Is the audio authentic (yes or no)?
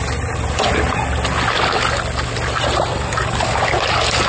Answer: yes